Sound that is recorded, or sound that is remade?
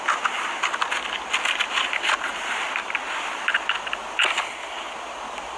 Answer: recorded